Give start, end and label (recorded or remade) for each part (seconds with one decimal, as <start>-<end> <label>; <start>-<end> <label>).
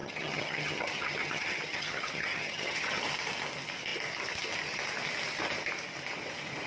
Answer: 0.0-3.0 remade; 3.0-6.7 recorded